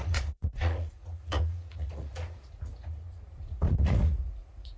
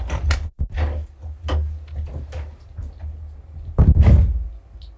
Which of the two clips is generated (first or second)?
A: first